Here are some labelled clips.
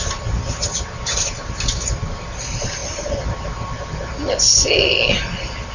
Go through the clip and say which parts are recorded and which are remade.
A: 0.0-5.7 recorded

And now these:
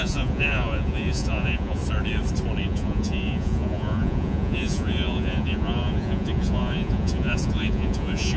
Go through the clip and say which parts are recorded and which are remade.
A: 0.0-1.8 remade; 1.8-2.6 recorded; 2.6-8.4 remade

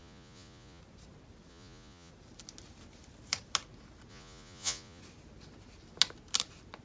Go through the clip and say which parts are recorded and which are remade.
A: 0.0-0.8 remade; 0.8-1.5 recorded; 1.5-2.1 remade; 2.1-4.1 recorded; 4.1-5.0 remade; 5.0-6.8 recorded